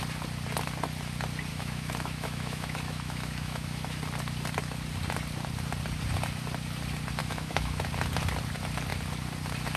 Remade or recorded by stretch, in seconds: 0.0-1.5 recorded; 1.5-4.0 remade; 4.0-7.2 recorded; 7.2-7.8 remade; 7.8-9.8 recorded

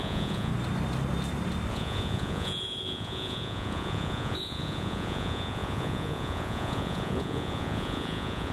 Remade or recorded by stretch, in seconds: 0.0-0.5 remade; 0.5-1.7 recorded; 1.7-8.5 remade

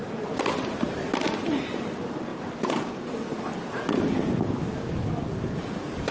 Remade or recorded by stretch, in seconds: 0.0-6.1 recorded

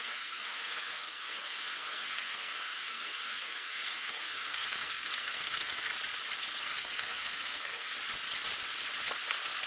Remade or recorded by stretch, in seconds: 0.0-5.9 remade; 5.9-6.6 recorded; 6.6-7.9 remade; 7.9-9.7 recorded

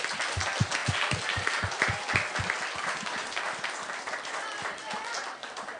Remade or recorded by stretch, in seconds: 0.0-5.8 recorded

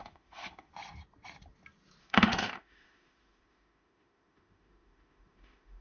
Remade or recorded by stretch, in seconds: 0.0-0.7 remade; 0.7-2.0 recorded; 2.0-5.8 remade

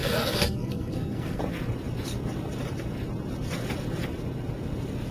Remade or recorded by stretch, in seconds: 0.0-1.4 remade; 1.4-5.1 recorded